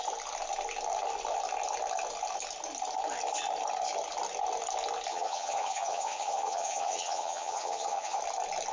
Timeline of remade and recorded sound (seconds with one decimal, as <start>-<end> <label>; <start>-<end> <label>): 0.0-5.1 recorded; 5.1-8.2 remade; 8.2-8.7 recorded